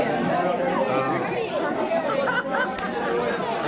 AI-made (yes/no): no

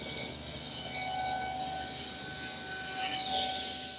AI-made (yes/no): no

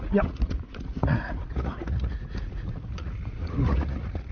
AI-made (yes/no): yes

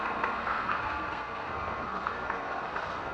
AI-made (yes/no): yes